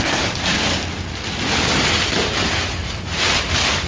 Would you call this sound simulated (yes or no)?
no